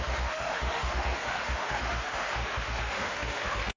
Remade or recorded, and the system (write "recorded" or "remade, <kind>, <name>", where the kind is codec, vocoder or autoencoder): remade, autoencoder, DAC-VAE